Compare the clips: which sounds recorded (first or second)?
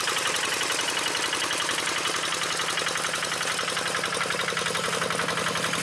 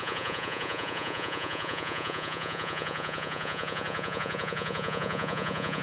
first